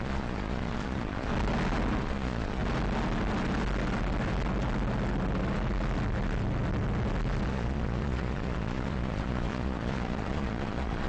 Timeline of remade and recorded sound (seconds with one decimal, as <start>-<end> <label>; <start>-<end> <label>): 0.0-1.3 remade; 1.3-2.0 recorded; 2.0-2.6 remade; 2.6-7.5 recorded; 7.5-11.1 remade